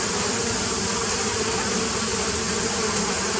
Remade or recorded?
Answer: remade